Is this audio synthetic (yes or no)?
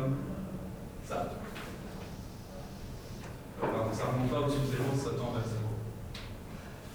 no